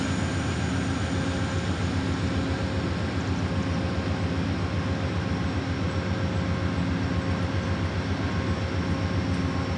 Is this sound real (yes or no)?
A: yes